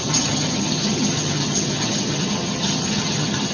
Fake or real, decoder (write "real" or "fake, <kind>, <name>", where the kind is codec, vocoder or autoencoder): fake, vocoder, HiFi-GAN